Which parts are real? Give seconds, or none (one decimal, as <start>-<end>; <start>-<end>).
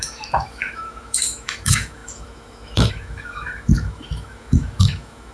none